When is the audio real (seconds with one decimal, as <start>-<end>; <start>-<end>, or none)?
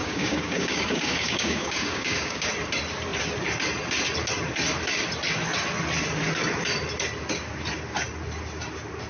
2.5-9.1